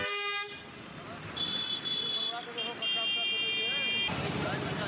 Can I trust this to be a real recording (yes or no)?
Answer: yes